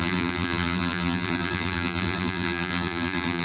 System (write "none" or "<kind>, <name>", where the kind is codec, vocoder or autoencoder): vocoder, BigVGAN v2